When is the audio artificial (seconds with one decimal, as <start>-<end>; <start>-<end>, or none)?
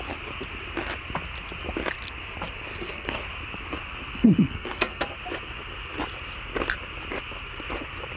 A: 2.7-3.2; 4.1-5.0